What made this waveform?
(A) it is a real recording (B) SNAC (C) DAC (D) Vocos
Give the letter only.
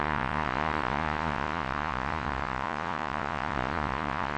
D